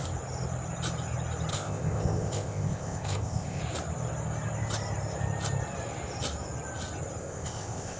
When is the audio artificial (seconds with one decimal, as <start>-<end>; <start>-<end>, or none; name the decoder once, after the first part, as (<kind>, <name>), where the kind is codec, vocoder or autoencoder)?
1.5-3.6 (codec, ZipCodec); 7.2-8.0